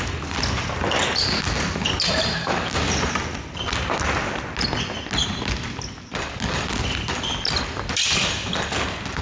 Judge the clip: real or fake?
real